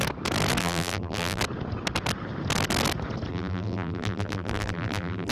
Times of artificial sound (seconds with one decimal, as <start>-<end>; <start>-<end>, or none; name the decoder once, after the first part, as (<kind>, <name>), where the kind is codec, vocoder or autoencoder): 0.6-1.4 (vocoder, BigVGAN v2); 3.3-5.3